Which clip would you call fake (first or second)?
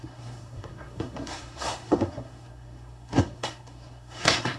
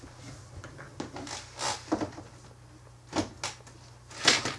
first